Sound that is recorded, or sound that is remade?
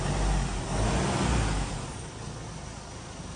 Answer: recorded